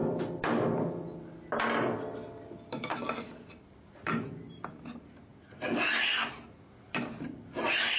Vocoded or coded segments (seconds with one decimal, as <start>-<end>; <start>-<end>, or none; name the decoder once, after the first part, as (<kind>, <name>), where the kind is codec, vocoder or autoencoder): none